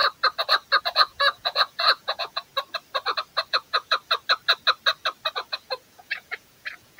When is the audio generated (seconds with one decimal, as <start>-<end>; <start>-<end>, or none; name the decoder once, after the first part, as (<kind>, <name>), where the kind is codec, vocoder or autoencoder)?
0.8-2.5 (vocoder, Vocos); 3.5-4.0; 5.5-7.0